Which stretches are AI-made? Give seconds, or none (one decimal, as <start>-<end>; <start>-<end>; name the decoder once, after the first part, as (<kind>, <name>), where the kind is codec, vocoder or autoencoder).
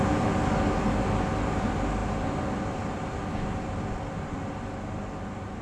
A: none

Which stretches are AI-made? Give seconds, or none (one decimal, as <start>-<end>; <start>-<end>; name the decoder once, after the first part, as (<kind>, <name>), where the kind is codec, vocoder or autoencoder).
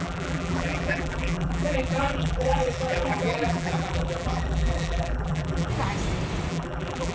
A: 0.0-5.7 (vocoder, BigVGAN v2); 6.5-7.1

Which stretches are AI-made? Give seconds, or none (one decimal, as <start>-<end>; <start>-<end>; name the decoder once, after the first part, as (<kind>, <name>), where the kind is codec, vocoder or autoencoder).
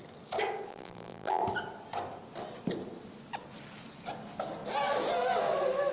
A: 0.7-1.4 (vocoder, BigVGAN v2)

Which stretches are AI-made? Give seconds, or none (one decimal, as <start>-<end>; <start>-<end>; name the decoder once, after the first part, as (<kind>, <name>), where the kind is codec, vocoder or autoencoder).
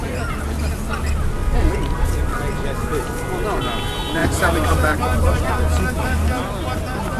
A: 1.4-2.3 (vocoder, BigVGAN v2); 4.2-5.5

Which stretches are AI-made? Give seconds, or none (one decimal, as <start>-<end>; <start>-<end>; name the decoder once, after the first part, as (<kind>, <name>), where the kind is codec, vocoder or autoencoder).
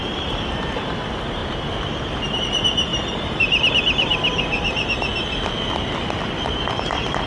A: 0.0-5.1 (vocoder, BigVGAN v2); 6.4-7.3